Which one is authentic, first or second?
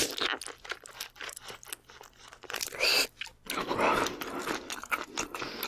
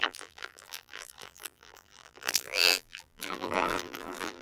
first